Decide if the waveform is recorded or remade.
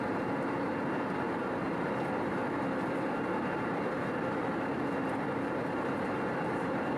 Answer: remade